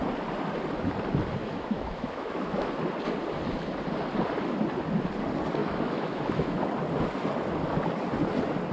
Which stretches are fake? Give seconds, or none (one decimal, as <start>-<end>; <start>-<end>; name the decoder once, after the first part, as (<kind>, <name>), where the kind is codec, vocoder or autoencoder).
1.4-2.7 (autoencoder, DAC-VAE); 5.6-6.6